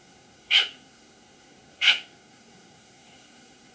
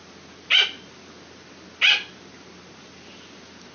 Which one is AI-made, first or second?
first